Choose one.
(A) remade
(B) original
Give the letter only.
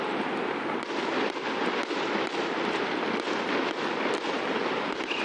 A